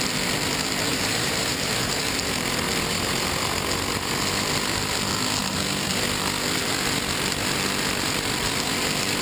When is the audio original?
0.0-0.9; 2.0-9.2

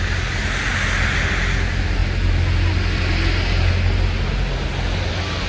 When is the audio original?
0.0-5.5

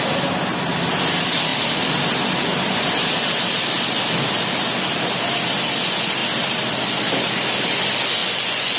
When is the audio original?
0.0-8.2